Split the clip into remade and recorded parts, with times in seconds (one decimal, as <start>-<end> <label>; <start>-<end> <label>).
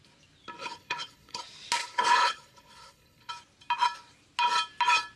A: 0.0-0.6 recorded; 0.6-1.4 remade; 1.4-1.8 recorded; 1.8-3.3 remade; 3.3-5.2 recorded